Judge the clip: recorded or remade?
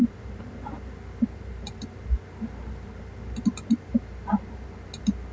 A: recorded